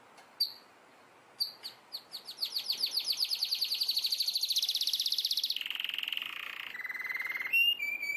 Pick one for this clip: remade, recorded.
recorded